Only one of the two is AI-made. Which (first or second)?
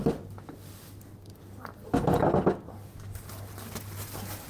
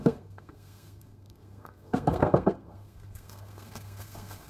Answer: second